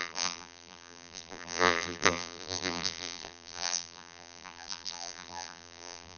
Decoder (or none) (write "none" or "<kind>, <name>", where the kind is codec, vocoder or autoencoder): vocoder, BigVGAN v2